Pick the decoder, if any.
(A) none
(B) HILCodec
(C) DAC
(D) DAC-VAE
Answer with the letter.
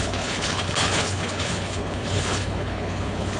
B